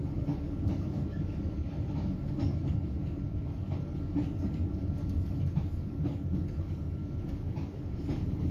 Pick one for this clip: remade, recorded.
remade